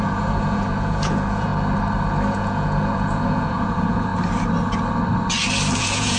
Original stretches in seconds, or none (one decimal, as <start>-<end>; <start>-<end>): 1.5-2.3; 4.1-5.8